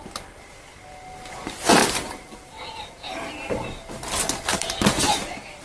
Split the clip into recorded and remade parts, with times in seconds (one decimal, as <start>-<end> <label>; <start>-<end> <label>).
0.0-1.8 recorded; 1.8-3.8 remade; 3.8-4.5 recorded; 4.5-5.6 remade